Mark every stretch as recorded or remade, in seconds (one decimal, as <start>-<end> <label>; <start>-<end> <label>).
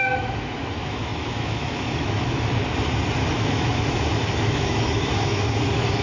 0.0-2.6 remade; 2.6-3.2 recorded; 3.2-6.0 remade